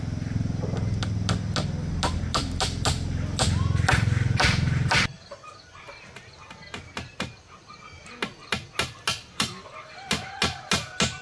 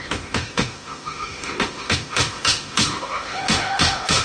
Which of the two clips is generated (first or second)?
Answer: second